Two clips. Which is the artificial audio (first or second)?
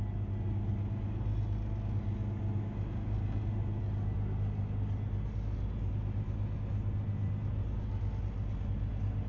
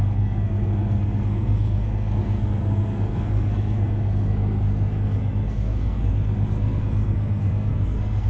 second